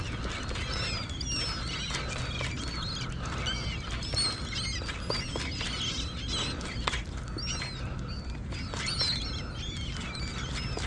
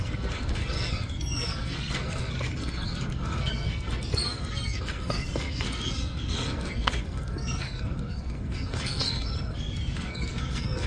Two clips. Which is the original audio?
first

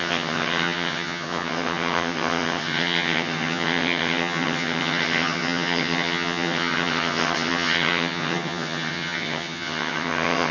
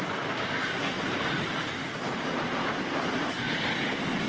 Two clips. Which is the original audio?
second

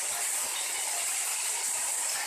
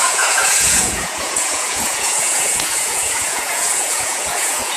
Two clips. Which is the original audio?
first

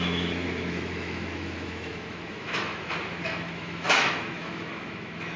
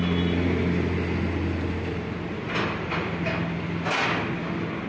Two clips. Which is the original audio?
second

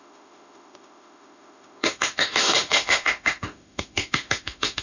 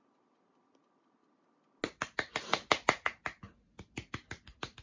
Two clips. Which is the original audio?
second